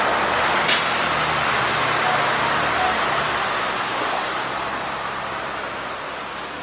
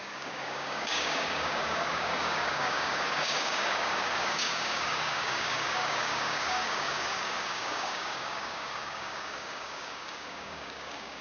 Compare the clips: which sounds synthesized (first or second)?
second